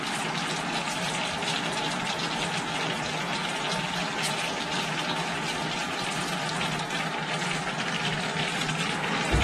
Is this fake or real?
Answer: real